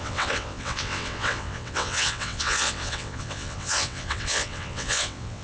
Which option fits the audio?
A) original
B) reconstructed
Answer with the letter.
B